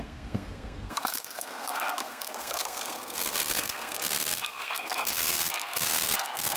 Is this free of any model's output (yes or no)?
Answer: no